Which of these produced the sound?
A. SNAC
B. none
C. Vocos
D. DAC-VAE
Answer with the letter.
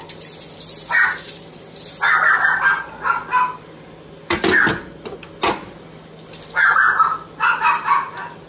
B